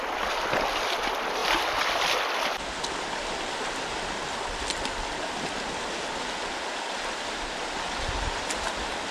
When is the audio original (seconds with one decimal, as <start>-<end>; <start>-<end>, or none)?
0.0-9.1